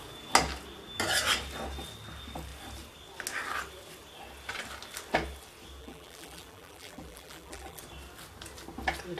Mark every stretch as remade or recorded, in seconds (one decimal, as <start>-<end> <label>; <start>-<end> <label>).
0.0-5.8 recorded; 5.8-7.8 remade; 7.8-9.2 recorded